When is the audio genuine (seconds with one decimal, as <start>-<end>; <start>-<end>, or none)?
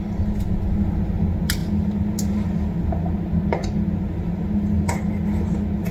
0.0-5.9